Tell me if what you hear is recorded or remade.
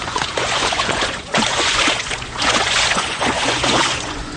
remade